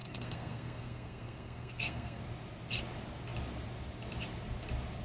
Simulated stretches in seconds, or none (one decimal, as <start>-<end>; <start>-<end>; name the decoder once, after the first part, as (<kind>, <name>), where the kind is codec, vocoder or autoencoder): 0.0-2.2 (codec, SNAC)